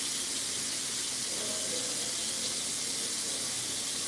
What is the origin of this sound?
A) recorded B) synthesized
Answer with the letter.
A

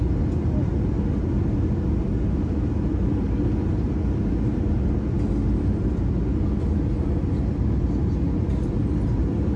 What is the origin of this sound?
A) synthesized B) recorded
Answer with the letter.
B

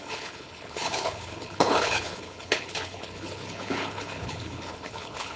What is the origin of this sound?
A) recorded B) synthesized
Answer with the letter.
B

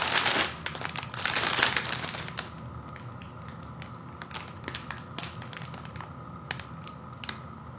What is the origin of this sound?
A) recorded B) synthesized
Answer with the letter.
A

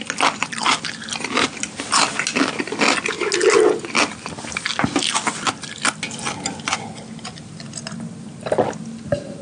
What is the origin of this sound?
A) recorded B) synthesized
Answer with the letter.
A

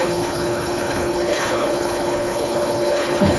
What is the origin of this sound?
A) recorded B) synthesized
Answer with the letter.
B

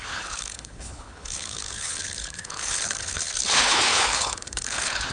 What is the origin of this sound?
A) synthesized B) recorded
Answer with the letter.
A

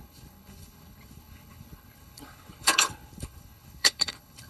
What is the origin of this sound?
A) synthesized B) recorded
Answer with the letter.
A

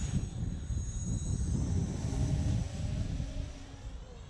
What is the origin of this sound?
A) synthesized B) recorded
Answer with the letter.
B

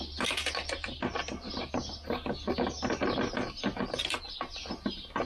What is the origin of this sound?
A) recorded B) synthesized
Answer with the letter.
A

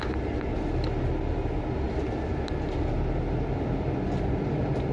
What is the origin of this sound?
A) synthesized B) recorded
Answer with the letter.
B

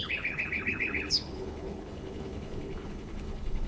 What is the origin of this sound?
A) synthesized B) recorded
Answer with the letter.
A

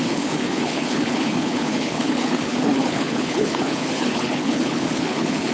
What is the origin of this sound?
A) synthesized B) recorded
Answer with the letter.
A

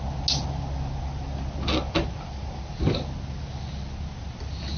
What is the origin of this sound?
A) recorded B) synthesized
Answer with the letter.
A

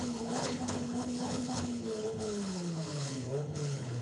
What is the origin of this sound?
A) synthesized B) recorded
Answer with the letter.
A